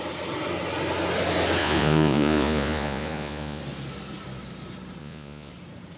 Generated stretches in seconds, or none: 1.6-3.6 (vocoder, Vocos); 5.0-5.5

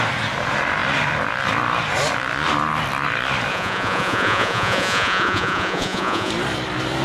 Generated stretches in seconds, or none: 3.5-6.3 (vocoder, Vocos)